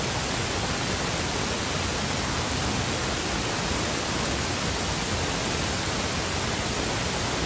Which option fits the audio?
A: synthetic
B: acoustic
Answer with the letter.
B